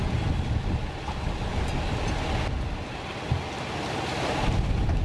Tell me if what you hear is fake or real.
real